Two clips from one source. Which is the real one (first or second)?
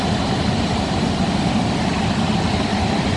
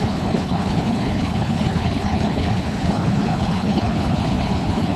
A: first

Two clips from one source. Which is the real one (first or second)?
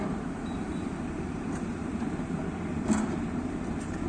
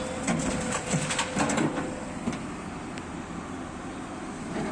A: second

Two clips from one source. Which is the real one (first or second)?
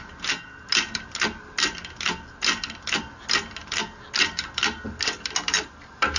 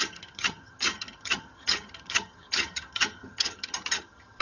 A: first